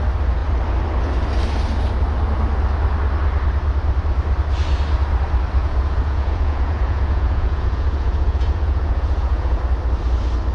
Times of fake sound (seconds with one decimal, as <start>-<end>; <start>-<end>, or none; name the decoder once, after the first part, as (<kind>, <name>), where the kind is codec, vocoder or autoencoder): 5.6-9.6 (vocoder, Vocos)